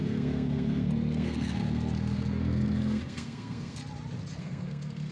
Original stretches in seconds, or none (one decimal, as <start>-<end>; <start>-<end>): 3.8-4.4